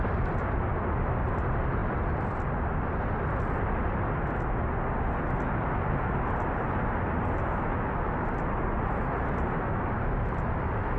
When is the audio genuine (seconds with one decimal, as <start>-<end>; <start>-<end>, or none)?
0.0-11.0